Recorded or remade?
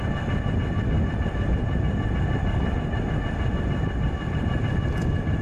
recorded